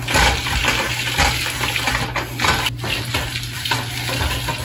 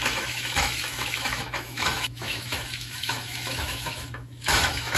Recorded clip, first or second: first